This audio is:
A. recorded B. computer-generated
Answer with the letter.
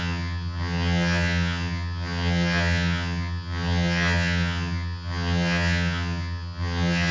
B